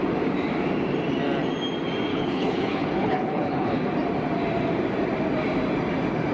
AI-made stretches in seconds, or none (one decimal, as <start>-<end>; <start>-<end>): 2.1-3.8